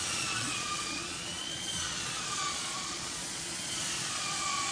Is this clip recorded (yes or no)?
no